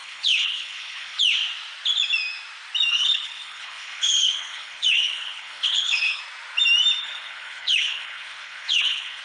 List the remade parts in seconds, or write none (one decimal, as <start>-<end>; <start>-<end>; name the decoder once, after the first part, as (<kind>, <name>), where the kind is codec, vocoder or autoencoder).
0.0-1.2 (codec, HILCodec); 2.9-6.2; 7.0-9.2